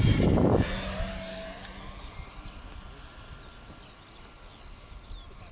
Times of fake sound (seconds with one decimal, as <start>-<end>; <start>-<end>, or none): none